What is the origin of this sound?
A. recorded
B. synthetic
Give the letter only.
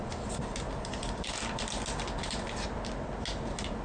A